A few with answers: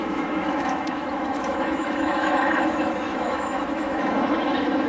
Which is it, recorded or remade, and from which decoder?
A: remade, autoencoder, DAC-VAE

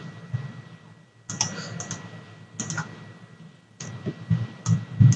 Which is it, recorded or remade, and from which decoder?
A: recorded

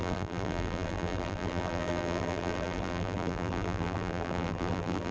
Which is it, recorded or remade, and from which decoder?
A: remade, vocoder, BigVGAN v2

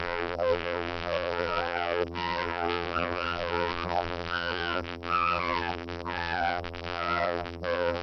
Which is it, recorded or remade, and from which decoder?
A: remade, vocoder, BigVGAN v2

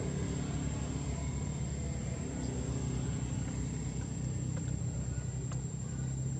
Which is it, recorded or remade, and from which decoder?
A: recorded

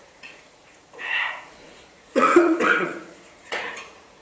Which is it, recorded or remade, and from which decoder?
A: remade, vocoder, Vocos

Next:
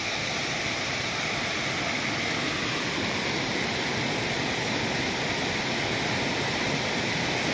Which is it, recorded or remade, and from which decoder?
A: recorded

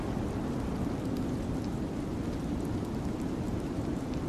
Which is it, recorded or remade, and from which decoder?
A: recorded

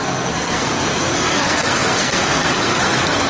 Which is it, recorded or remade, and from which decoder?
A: remade, codec, SNAC